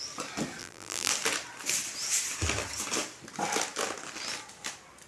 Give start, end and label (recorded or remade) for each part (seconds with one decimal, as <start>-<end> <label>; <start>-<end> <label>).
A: 0.0-0.6 recorded; 0.6-1.1 remade; 1.1-5.1 recorded